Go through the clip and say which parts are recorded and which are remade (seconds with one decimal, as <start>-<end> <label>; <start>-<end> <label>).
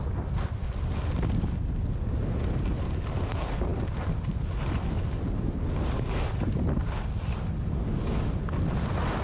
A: 0.0-9.2 recorded